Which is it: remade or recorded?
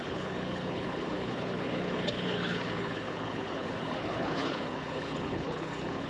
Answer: remade